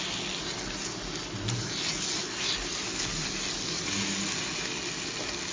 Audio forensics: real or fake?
real